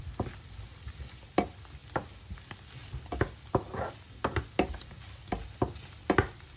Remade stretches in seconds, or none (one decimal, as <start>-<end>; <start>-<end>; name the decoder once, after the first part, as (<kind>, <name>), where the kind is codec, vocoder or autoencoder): none